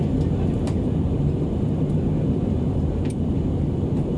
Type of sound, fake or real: real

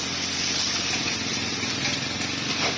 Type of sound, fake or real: real